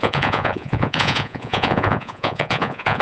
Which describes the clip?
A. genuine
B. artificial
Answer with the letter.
B